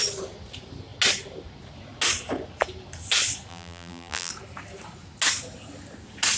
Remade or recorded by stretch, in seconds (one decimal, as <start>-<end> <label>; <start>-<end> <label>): 0.0-3.5 recorded; 3.5-4.3 remade; 4.3-6.4 recorded